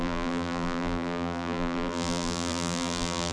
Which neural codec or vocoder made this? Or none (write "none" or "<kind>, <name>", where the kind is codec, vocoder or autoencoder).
vocoder, BigVGAN v2